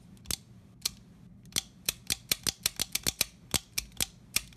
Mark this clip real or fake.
real